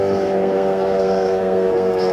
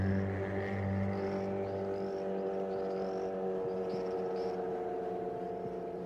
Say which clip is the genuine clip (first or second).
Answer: second